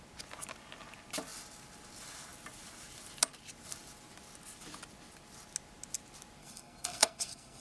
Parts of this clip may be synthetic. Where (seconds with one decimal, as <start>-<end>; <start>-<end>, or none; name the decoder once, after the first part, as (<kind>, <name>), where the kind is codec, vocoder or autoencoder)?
6.4-7.6 (codec, SNAC)